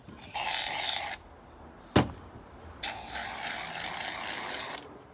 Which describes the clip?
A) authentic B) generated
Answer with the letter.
A